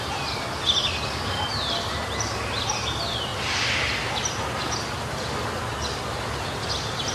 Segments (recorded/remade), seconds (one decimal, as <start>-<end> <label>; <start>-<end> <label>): 0.0-7.1 recorded